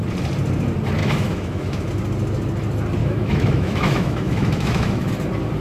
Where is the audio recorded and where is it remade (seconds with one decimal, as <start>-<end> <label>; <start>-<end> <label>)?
0.0-1.0 recorded; 1.0-1.9 remade; 1.9-3.0 recorded; 3.0-5.1 remade; 5.1-5.6 recorded